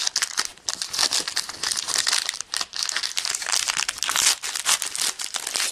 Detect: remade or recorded recorded